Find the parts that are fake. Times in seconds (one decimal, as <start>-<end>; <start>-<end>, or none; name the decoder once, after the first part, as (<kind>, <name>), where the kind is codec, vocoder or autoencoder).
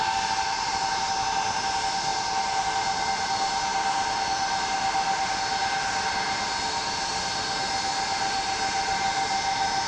none